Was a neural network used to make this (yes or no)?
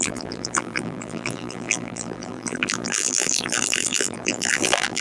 yes